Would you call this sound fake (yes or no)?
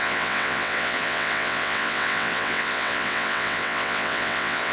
yes